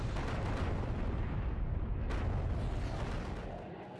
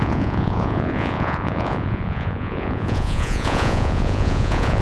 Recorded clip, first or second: first